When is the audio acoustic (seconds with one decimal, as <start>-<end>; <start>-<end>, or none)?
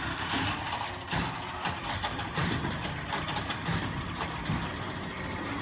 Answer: 0.0-5.6